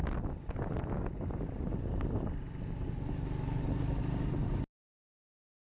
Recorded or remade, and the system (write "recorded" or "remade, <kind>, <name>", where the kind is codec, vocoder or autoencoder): recorded